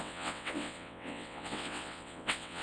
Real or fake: fake